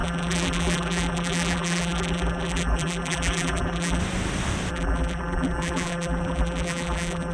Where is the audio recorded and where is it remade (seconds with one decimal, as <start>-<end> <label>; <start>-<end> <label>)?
0.0-4.0 remade; 4.0-4.7 recorded; 4.7-7.3 remade